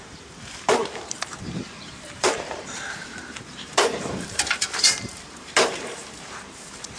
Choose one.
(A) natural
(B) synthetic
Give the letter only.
B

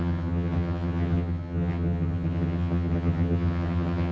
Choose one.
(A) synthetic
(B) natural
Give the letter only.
A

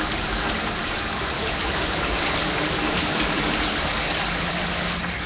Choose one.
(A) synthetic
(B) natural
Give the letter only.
A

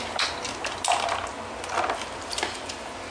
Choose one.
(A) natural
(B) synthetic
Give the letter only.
A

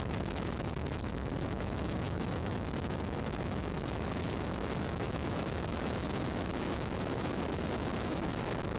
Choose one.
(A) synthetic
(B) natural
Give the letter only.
A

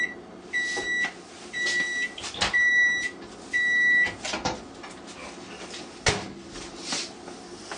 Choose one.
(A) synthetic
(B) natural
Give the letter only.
B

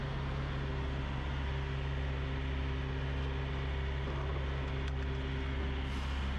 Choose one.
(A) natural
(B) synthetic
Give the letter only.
A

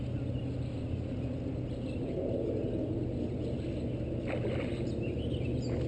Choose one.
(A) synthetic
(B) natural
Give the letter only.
B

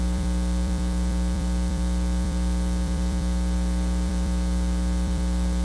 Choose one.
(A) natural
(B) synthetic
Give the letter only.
B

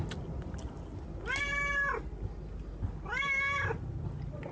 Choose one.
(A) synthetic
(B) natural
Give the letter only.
B